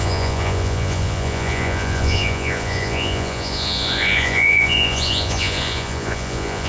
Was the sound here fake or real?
fake